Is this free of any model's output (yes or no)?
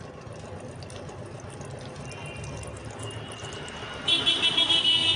yes